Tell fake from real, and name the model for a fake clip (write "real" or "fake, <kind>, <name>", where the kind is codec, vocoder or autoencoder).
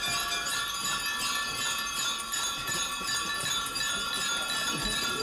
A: real